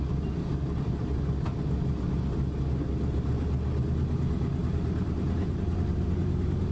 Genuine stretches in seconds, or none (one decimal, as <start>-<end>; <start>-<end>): 0.0-4.6; 5.8-6.7